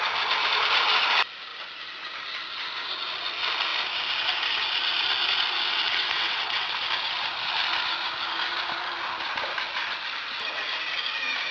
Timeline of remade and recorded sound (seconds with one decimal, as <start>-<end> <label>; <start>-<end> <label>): 0.0-5.7 recorded; 5.7-6.7 remade; 6.7-11.5 recorded